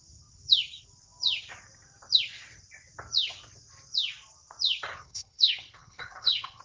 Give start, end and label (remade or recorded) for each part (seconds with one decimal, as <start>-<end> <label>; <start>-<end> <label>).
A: 0.0-4.9 recorded; 4.9-6.6 remade